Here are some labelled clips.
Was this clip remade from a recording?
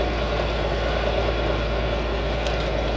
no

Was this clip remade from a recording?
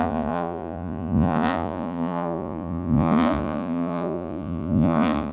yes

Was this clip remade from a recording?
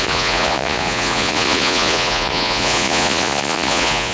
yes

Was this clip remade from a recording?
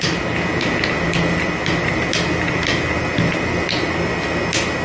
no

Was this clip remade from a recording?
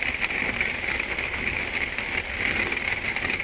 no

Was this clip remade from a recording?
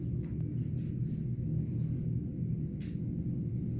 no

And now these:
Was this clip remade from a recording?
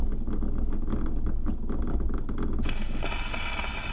no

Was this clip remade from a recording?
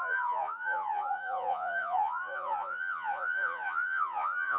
yes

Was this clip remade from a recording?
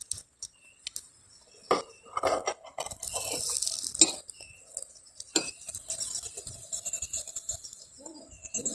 no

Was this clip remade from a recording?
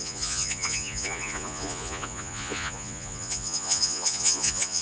yes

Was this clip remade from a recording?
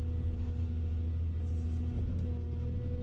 no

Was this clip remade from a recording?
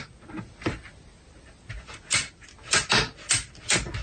no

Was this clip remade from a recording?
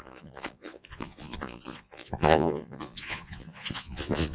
yes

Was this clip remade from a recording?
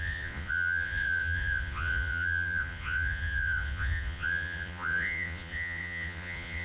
yes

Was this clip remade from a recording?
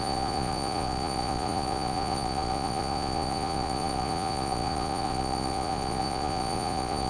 yes